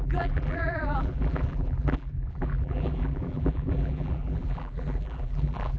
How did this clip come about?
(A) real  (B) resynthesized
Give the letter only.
B